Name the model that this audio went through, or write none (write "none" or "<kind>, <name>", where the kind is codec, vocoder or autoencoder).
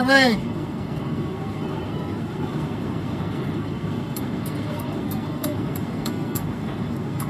codec, SNAC